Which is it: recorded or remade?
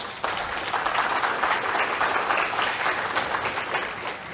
recorded